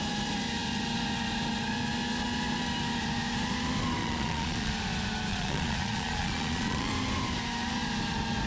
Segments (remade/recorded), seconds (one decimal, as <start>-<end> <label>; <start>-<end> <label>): 0.0-4.0 recorded; 4.0-4.7 remade; 4.7-5.3 recorded; 5.3-6.9 remade; 6.9-8.5 recorded